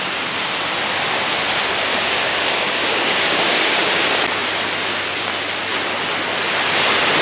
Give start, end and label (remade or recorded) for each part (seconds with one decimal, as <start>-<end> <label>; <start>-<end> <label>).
0.0-1.9 recorded; 1.9-4.0 remade; 4.0-7.2 recorded